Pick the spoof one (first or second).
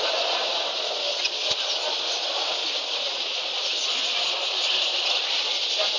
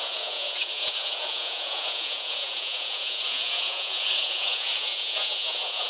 second